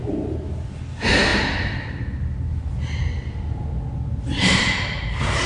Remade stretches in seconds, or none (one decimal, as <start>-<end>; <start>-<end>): none